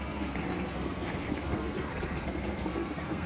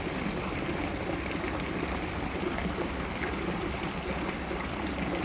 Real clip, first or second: second